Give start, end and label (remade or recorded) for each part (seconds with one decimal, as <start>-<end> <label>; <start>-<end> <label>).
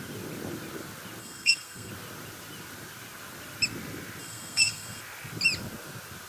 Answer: 0.0-1.2 recorded; 1.2-1.9 remade; 1.9-4.2 recorded; 4.2-5.0 remade; 5.0-6.3 recorded